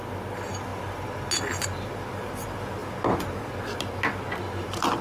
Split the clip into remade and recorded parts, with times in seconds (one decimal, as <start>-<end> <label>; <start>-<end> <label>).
0.0-5.0 recorded